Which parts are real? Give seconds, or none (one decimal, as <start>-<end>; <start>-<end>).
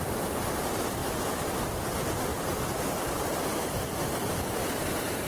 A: 0.0-2.3; 3.2-5.3